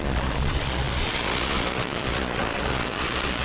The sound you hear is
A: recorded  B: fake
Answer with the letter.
B